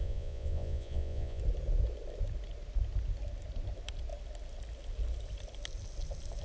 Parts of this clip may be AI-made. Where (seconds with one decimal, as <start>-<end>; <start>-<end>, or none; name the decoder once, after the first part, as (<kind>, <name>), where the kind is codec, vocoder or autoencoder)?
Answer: 0.0-1.4 (vocoder, Vocos)